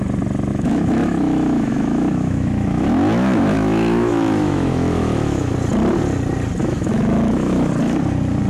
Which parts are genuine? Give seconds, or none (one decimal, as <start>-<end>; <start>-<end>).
0.0-0.5; 5.5-6.6; 7.7-8.5

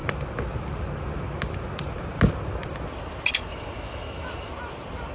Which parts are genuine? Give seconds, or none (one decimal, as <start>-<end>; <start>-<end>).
0.0-3.5; 4.5-5.1

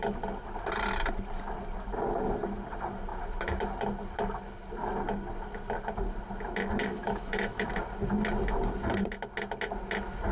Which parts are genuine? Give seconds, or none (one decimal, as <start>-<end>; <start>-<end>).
0.0-6.8; 7.7-10.3